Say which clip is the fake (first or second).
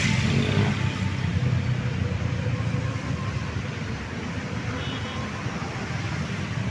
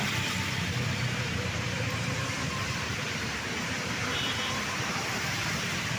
second